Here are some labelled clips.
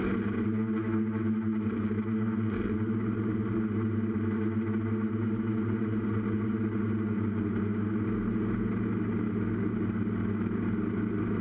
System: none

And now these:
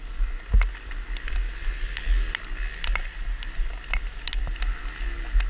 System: none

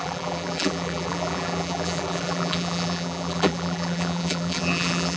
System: vocoder, BigVGAN v2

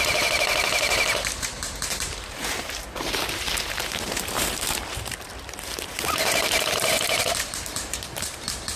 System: vocoder, BigVGAN v2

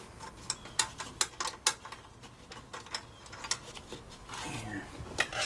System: none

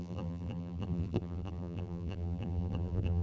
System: vocoder, BigVGAN v2